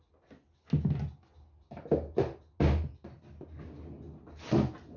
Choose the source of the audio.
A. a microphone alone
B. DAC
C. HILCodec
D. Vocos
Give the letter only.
A